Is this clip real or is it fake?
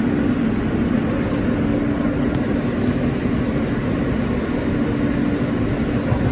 real